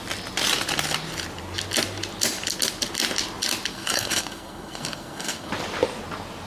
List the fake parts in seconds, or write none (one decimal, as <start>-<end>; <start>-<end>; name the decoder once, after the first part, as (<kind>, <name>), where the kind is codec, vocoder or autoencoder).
3.7-5.5 (codec, SNAC)